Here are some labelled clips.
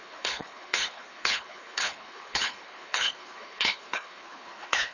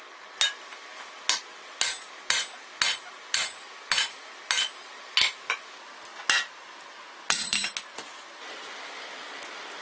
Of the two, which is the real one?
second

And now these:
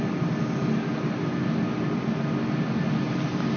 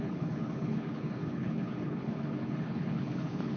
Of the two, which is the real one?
first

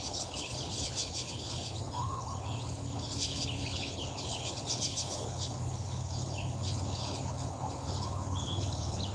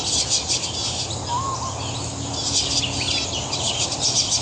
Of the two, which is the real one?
second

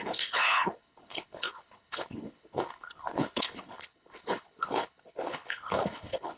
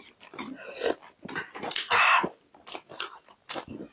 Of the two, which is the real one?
second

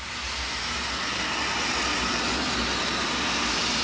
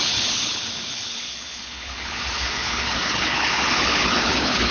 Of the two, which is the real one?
first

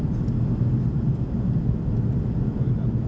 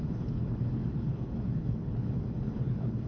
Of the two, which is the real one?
first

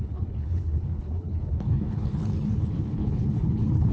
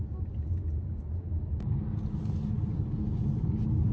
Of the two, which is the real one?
second